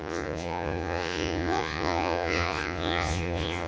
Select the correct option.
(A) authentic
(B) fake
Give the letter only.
B